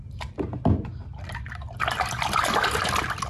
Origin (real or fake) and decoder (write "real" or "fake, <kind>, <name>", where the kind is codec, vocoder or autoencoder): real